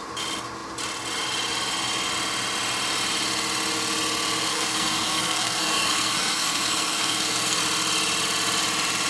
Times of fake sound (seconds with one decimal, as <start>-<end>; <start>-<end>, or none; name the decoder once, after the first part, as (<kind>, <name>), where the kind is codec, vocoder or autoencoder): 4.5-7.6 (codec, SNAC)